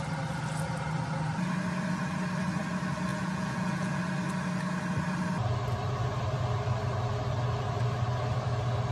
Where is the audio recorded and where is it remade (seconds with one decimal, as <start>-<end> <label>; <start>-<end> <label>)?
0.0-3.1 recorded; 3.1-4.0 remade; 4.0-8.9 recorded